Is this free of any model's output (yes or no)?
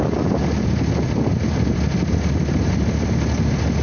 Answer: yes